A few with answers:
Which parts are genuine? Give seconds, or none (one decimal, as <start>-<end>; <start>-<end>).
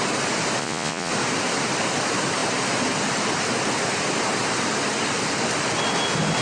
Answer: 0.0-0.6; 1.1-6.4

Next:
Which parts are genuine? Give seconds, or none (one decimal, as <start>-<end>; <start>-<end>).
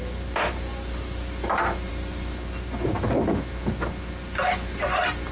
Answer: 0.0-5.3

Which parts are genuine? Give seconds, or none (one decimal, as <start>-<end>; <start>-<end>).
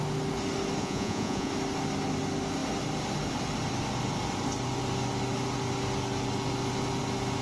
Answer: 0.0-0.8; 1.5-7.4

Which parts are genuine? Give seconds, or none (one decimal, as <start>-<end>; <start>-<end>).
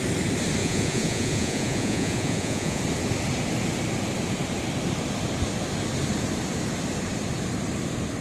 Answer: 0.0-0.6; 2.8-8.2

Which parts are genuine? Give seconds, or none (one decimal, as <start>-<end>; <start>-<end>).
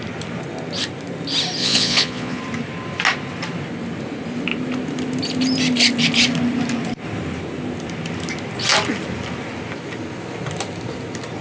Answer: 0.0-1.6; 2.4-11.4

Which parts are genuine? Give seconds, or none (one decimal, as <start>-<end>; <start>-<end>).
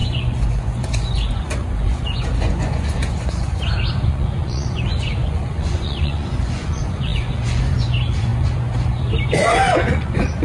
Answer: none